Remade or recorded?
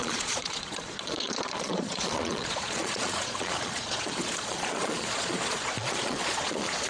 remade